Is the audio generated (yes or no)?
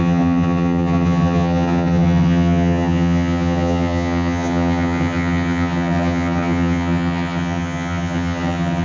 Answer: yes